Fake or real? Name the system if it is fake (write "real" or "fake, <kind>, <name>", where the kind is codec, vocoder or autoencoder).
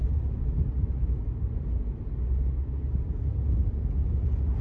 real